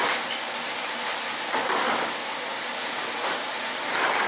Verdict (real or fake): real